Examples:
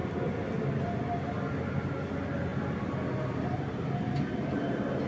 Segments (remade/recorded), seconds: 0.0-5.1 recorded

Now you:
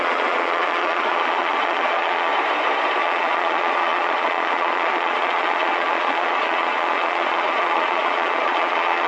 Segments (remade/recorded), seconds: 0.0-2.3 remade; 2.3-3.0 recorded; 3.0-9.1 remade

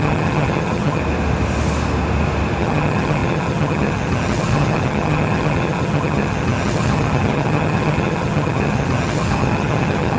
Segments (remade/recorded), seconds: 0.0-1.0 remade; 1.0-2.6 recorded; 2.6-10.2 remade

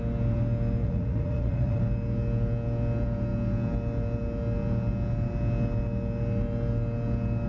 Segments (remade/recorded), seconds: 0.0-0.8 recorded; 0.8-1.8 remade; 1.8-7.5 recorded

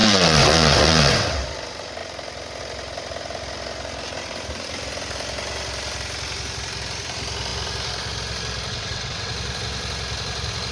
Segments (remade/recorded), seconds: 0.0-1.4 remade; 1.4-8.7 recorded; 8.7-9.3 remade; 9.3-10.7 recorded

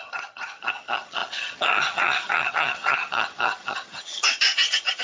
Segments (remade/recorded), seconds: 0.0-5.0 remade

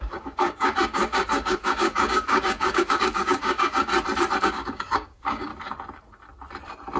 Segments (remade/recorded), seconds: 0.0-3.9 remade; 3.9-4.4 recorded; 4.4-5.5 remade; 5.5-7.0 recorded